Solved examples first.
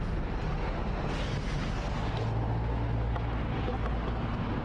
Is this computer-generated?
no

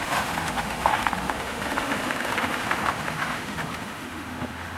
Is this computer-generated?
yes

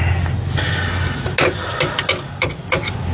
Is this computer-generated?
no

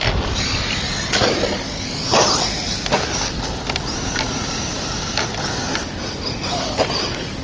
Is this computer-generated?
no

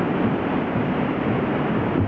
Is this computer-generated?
no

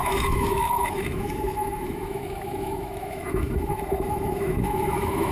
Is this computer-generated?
yes